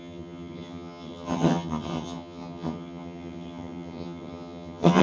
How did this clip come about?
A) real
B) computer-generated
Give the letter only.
B